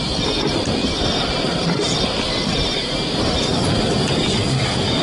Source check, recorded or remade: remade